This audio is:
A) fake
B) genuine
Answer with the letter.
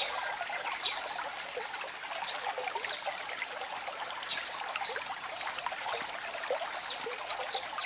B